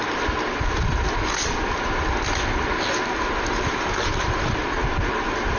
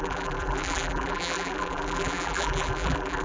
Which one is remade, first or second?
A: second